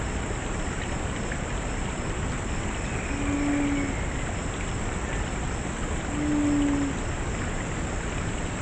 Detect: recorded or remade recorded